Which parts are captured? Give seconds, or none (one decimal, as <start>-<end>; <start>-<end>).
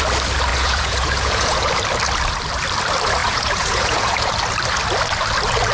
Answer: 0.0-0.5; 1.7-3.2; 4.3-5.7